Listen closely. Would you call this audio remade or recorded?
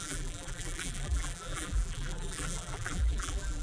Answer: remade